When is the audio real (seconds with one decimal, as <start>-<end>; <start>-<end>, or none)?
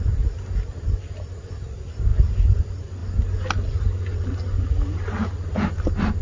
0.0-6.2